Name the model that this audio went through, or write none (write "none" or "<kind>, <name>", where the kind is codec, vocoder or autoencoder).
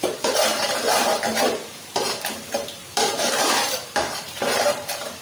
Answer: vocoder, BigVGAN v2